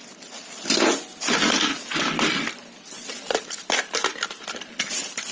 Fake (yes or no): no